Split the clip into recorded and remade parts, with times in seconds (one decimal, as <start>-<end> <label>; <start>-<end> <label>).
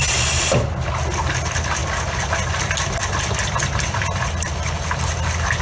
0.0-5.6 recorded